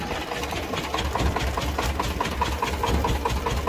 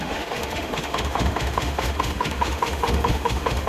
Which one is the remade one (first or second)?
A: second